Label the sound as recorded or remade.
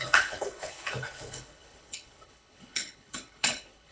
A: remade